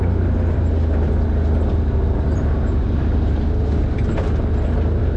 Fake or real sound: real